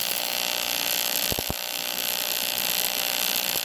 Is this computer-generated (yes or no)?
no